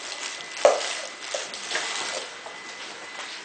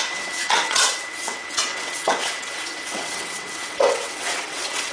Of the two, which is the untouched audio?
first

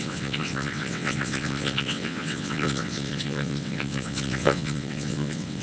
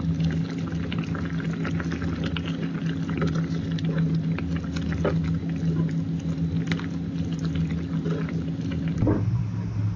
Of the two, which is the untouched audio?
second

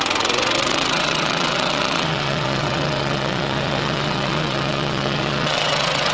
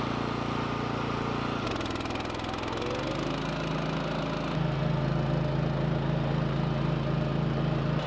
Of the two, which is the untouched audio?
second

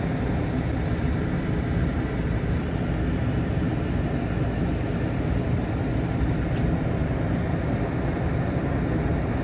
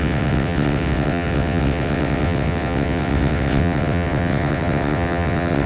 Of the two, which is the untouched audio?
first